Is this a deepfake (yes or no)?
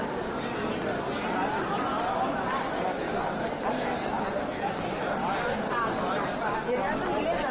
no